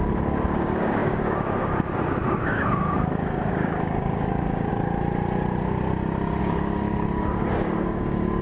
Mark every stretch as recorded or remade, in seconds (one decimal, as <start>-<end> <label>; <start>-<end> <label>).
0.0-4.7 remade; 4.7-6.4 recorded; 6.4-8.4 remade